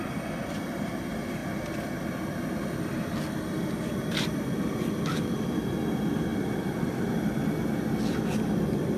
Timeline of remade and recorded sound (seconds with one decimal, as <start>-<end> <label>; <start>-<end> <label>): 0.0-6.3 recorded; 6.3-7.5 remade; 7.5-9.0 recorded